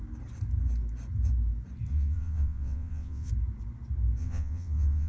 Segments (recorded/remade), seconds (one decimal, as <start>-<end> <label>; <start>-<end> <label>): 0.0-1.9 recorded; 1.9-3.3 remade; 3.3-4.2 recorded; 4.2-5.1 remade